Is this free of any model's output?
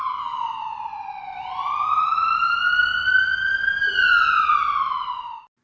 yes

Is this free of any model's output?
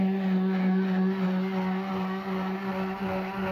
yes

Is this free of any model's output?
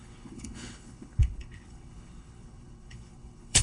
no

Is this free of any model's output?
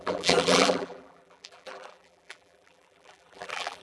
no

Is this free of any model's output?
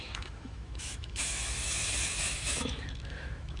no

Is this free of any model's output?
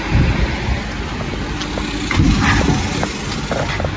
yes